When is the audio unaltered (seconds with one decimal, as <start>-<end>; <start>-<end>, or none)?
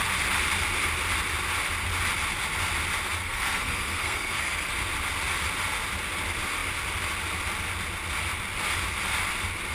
0.0-3.2; 4.7-9.7